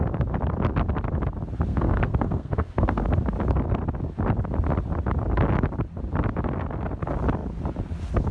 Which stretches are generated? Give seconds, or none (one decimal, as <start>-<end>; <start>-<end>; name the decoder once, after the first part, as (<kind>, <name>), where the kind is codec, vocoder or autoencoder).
1.7-3.1 (codec, SNAC)